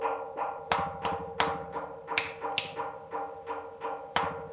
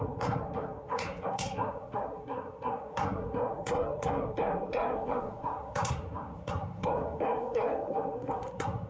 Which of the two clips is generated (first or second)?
second